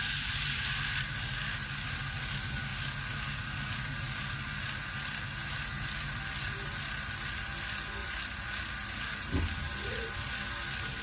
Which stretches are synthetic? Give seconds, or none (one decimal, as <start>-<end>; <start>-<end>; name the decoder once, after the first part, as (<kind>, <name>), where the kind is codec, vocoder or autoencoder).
8.0-8.5 (vocoder, BigVGAN v2)